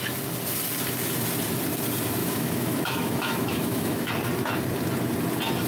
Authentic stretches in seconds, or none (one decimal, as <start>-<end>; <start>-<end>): 0.0-2.2; 4.1-5.7